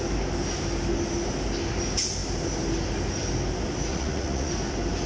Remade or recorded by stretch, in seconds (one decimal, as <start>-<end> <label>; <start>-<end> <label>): 0.0-3.9 recorded; 3.9-4.5 remade; 4.5-5.1 recorded